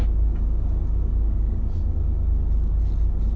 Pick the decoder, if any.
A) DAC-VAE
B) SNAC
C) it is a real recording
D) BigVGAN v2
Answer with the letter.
C